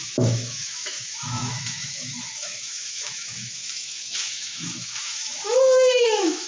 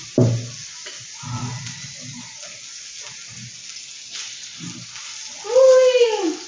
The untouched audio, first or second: second